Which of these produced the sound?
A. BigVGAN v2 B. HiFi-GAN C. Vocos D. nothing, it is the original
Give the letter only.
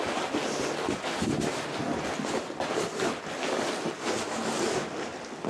D